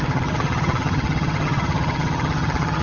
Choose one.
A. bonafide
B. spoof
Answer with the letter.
B